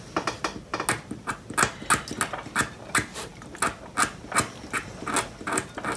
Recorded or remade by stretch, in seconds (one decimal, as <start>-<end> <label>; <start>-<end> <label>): 0.0-6.0 recorded

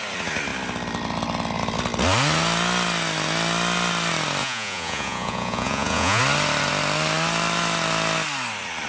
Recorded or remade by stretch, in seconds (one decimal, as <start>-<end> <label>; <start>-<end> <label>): 0.0-4.4 recorded; 4.4-6.2 remade; 6.2-8.9 recorded

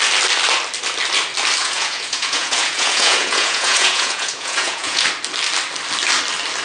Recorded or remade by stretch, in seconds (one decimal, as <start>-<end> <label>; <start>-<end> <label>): 0.0-1.6 recorded; 1.6-5.0 remade; 5.0-6.6 recorded

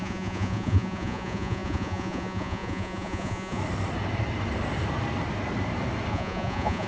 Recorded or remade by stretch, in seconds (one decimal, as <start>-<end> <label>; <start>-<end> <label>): 0.0-3.6 remade; 3.6-6.1 recorded; 6.1-6.9 remade

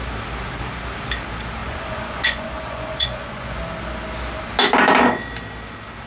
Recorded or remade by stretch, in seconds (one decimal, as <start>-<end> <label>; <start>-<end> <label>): 0.0-1.6 recorded; 1.6-3.6 remade; 3.6-6.1 recorded

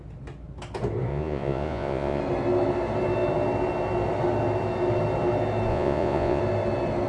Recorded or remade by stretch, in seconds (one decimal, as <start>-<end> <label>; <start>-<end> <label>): 0.0-1.1 recorded; 1.1-2.2 remade; 2.2-5.7 recorded; 5.7-6.4 remade; 6.4-7.1 recorded

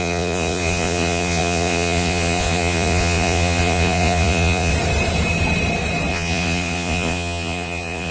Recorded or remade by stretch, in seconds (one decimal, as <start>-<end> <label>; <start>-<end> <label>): 0.0-4.7 remade; 4.7-6.1 recorded; 6.1-8.1 remade

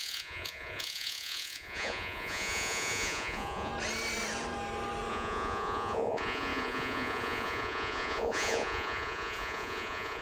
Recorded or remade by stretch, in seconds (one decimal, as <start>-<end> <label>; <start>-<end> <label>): 0.0-3.7 remade; 3.7-5.1 recorded; 5.1-10.2 remade